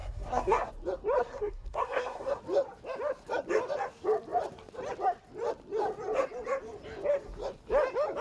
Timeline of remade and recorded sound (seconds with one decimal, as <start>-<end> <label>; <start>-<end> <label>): 0.0-0.7 remade; 0.7-1.2 recorded; 1.2-2.4 remade; 2.4-8.2 recorded